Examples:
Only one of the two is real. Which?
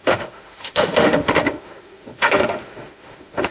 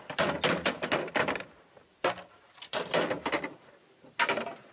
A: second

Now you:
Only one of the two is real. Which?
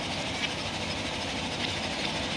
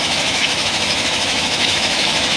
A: first